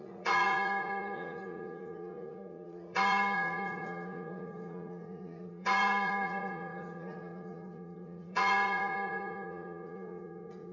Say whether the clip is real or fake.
fake